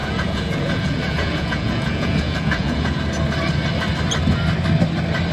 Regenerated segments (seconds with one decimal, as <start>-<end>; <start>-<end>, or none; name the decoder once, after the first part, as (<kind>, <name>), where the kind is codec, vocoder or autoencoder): 0.0-3.0 (vocoder, Vocos)

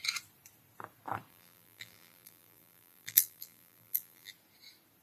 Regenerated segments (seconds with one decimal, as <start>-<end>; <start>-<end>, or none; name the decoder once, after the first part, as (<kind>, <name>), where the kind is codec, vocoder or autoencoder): 1.3-4.3 (vocoder, BigVGAN v2)

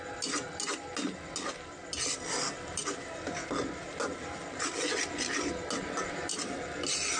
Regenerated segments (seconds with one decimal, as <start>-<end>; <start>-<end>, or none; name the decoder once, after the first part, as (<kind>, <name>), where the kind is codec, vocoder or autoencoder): none

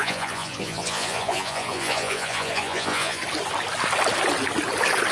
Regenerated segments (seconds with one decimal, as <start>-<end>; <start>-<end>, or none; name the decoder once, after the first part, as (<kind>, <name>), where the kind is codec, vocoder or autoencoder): 0.0-3.2 (vocoder, Vocos)

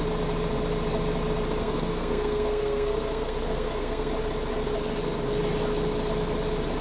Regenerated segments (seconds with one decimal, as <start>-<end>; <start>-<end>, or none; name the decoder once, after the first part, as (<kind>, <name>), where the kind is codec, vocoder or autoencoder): 1.6-4.1 (codec, SNAC)